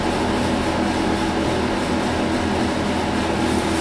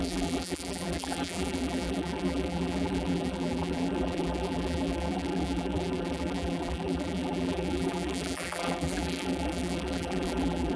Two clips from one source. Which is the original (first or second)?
first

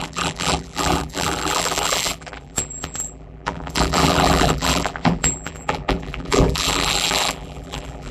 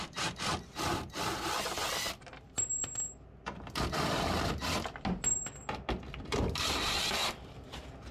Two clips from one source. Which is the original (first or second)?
second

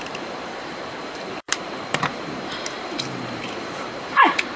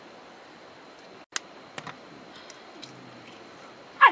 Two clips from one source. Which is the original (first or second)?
second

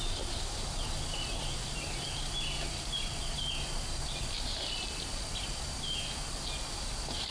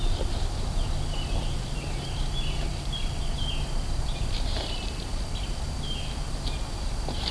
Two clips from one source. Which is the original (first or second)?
first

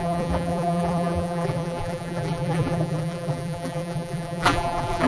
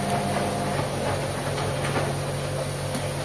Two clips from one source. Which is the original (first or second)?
second